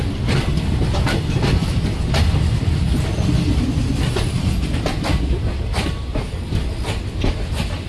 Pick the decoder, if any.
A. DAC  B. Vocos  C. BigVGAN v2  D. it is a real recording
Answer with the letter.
D